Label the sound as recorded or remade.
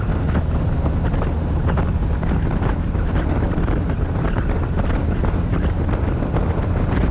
recorded